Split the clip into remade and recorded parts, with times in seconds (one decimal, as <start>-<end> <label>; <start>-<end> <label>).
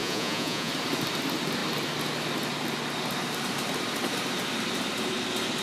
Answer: 0.0-0.7 remade; 0.7-5.6 recorded